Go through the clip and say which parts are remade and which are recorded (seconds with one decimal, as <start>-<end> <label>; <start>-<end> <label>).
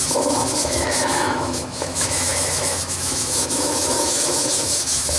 0.0-5.2 remade